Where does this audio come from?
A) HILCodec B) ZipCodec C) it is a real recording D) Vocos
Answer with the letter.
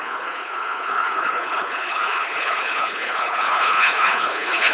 A